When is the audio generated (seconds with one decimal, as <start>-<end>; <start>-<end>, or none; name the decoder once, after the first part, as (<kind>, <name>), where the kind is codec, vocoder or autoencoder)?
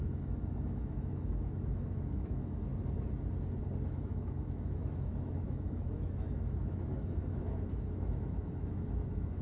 0.0-2.7 (autoencoder, DAC-VAE); 3.9-9.4